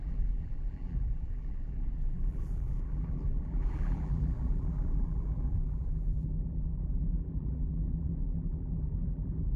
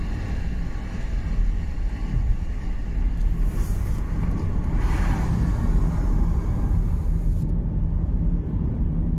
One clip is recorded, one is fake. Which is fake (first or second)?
first